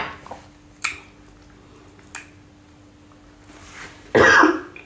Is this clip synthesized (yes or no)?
no